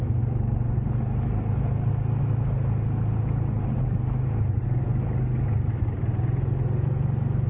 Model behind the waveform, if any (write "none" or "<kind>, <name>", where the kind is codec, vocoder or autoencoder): none